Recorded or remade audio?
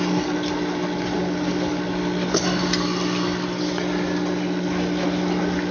recorded